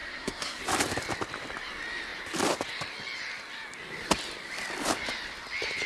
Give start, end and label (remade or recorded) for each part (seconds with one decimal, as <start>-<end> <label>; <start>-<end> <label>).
0.0-0.6 remade; 0.6-5.9 recorded

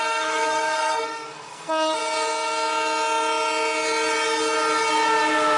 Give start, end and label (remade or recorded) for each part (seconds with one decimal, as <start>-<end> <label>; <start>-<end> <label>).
0.0-2.0 remade; 2.0-5.6 recorded

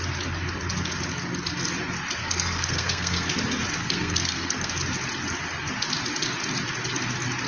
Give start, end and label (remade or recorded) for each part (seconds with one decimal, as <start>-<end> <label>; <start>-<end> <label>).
0.0-2.2 recorded; 2.2-3.3 remade; 3.3-3.8 recorded; 3.8-4.7 remade; 4.7-7.5 recorded

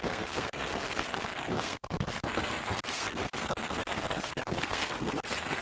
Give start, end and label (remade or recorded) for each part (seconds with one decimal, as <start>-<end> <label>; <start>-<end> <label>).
0.0-5.6 remade